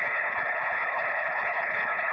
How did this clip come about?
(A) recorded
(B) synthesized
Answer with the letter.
B